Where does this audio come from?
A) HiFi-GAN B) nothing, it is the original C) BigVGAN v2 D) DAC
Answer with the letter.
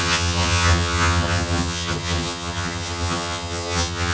A